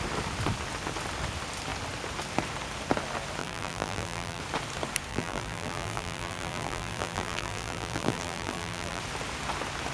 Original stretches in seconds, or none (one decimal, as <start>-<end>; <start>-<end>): 0.0-3.4; 4.4-5.1; 9.0-9.9